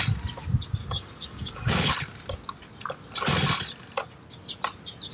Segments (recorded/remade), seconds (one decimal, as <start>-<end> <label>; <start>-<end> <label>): 0.0-0.8 recorded; 0.8-1.9 remade; 1.9-5.1 recorded